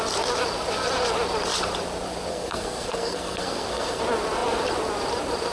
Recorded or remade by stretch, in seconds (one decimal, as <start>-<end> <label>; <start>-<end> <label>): 0.0-2.3 recorded; 2.3-4.0 remade; 4.0-5.5 recorded